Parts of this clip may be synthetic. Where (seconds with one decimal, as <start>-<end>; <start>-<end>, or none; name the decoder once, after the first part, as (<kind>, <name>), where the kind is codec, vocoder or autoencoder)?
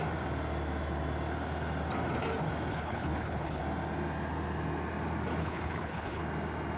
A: 2.7-3.6 (codec, HILCodec); 5.4-6.2